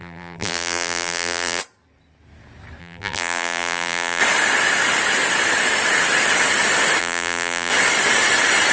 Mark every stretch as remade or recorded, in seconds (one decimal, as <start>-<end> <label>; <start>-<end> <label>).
0.0-1.6 remade; 1.6-2.8 recorded; 2.8-4.2 remade; 4.2-7.0 recorded; 7.0-7.7 remade; 7.7-8.7 recorded

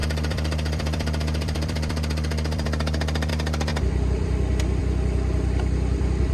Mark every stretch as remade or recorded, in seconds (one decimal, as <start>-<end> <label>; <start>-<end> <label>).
0.0-3.3 remade; 3.3-3.7 recorded; 3.7-4.8 remade; 4.8-6.3 recorded

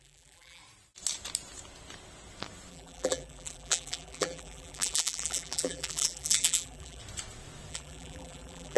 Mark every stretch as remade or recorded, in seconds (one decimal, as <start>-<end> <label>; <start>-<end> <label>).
0.0-0.6 remade; 0.6-2.7 recorded; 2.7-7.0 remade; 7.0-7.7 recorded; 7.7-8.8 remade

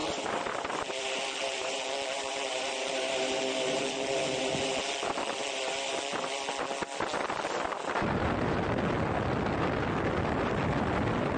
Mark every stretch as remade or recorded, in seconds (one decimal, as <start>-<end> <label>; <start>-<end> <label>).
0.0-4.4 remade; 4.4-11.4 recorded